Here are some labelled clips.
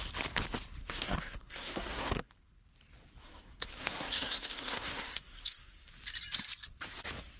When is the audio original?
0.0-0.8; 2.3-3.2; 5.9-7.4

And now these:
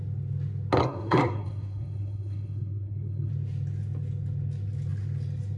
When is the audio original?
0.0-0.8; 3.3-5.6

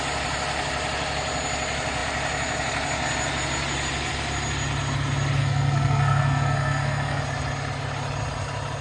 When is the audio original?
0.0-5.4; 7.2-8.8